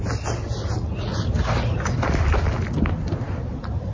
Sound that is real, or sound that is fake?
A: real